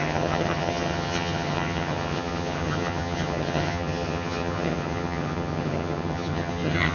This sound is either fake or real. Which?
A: fake